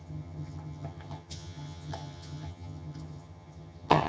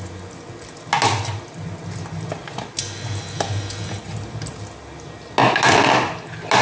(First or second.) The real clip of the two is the second